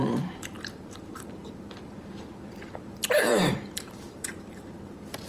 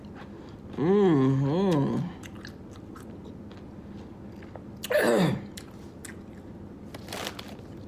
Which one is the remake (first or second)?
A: first